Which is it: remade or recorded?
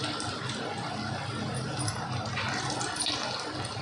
recorded